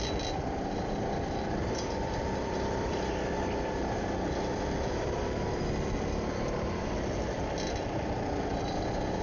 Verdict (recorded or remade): recorded